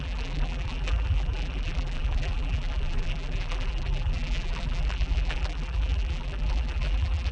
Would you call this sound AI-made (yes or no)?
yes